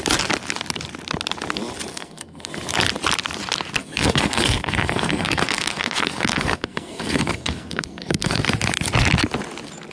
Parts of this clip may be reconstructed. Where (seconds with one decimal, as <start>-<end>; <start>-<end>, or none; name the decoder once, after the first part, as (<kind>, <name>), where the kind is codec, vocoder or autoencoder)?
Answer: 1.9-2.5 (codec, SNAC); 3.8-8.4